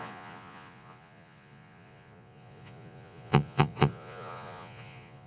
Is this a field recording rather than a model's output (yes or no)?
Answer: no